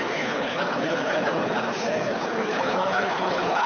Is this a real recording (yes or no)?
no